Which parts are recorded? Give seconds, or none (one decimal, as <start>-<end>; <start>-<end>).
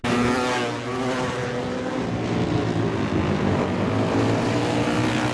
0.0-5.3